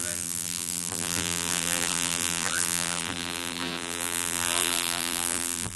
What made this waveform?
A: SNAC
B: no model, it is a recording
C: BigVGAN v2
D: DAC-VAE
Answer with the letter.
C